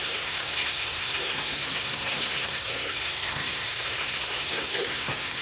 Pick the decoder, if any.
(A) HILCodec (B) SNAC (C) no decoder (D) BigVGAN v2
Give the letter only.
B